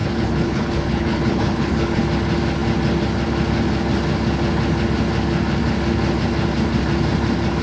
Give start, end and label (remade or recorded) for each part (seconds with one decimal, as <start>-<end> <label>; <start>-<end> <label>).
0.0-2.0 remade; 2.0-7.6 recorded